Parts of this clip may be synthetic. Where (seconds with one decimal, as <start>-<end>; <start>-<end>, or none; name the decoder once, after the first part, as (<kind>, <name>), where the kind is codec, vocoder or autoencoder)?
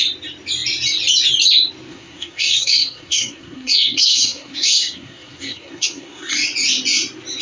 1.9-6.3 (codec, SNAC)